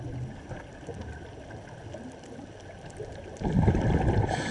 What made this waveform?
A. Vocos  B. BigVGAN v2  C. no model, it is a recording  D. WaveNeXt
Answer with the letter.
C